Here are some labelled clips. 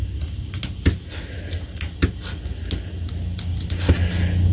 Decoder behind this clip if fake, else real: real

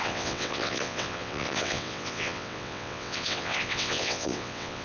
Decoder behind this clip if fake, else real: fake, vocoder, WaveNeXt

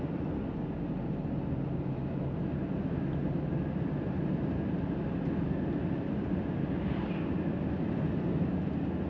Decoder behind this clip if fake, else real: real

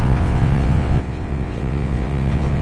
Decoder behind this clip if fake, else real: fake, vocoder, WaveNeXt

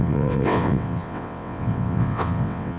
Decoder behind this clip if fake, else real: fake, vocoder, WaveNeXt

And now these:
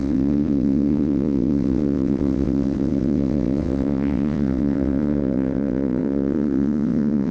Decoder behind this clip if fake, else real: fake, vocoder, WaveNeXt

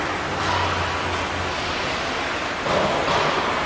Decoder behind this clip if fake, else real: real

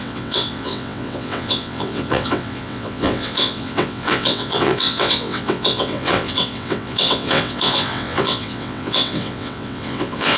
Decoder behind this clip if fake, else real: fake, vocoder, WaveNeXt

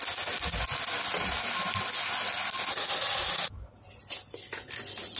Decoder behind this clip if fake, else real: real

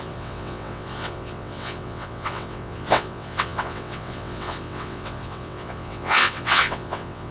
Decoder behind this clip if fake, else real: fake, vocoder, WaveNeXt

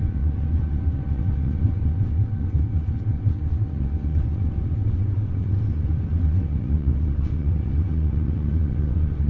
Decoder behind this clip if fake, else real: fake, vocoder, WaveNeXt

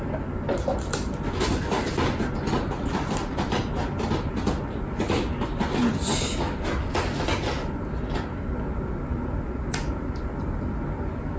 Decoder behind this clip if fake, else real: real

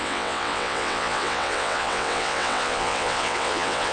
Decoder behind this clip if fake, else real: fake, vocoder, WaveNeXt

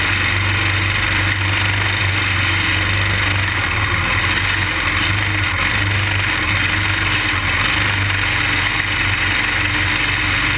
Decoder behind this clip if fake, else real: real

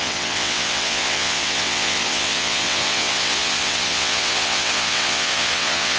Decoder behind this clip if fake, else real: fake, vocoder, WaveNeXt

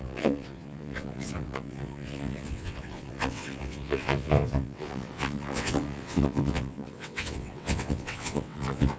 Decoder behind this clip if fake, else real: fake, vocoder, WaveNeXt